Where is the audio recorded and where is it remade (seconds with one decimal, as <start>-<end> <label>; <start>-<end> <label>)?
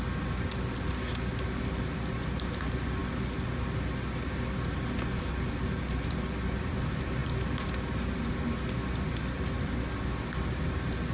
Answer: 0.0-11.1 recorded